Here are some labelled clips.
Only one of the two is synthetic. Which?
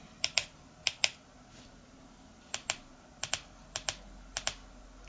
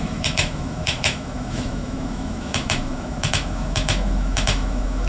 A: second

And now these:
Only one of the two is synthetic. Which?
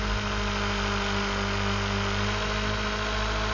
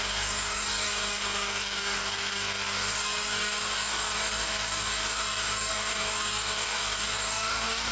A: second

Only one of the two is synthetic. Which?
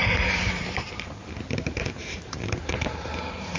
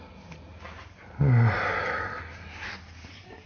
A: first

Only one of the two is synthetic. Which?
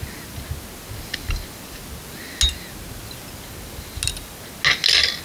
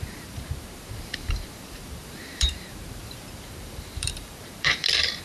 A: second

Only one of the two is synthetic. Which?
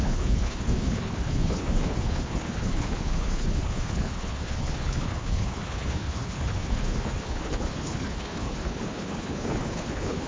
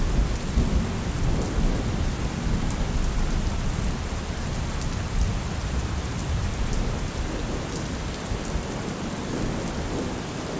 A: first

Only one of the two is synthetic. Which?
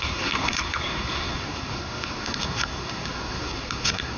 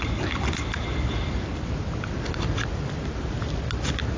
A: first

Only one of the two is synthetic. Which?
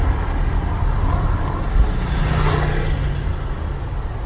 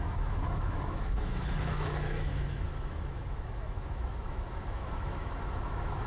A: second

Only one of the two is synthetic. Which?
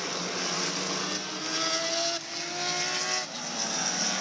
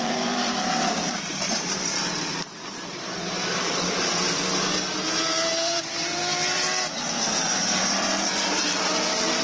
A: second